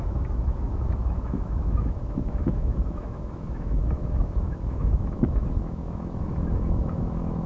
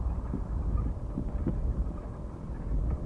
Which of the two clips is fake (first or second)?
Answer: first